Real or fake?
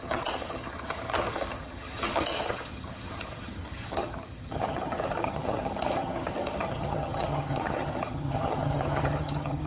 fake